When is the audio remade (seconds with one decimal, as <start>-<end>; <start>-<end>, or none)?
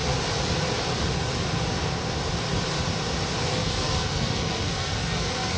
3.5-5.6